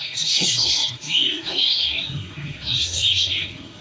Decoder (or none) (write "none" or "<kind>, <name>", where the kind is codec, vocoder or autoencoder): codec, SNAC